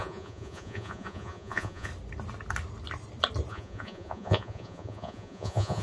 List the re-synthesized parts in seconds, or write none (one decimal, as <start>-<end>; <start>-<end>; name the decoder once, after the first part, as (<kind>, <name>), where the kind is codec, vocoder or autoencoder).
0.0-1.9 (vocoder, Vocos); 3.5-5.8